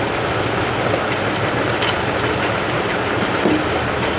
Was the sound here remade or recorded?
recorded